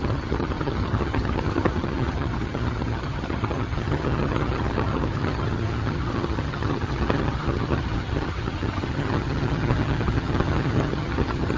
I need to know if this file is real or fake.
fake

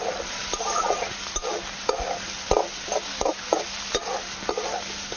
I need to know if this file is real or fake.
real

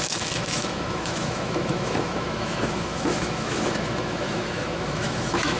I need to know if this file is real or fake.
fake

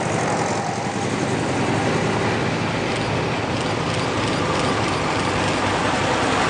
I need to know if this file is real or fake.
real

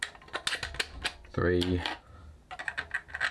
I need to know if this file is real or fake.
real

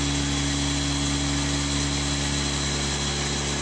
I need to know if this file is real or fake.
real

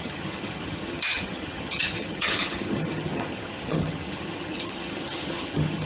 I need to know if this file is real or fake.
fake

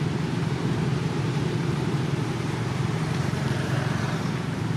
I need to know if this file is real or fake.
fake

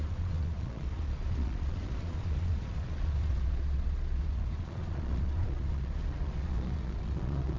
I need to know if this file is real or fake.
fake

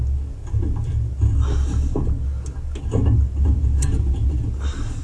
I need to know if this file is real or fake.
real